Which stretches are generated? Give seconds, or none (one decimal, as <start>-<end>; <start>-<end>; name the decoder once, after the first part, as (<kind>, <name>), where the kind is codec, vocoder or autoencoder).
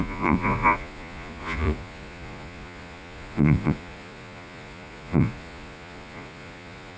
0.0-7.0 (vocoder, Vocos)